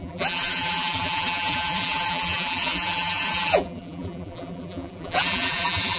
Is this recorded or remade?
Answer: remade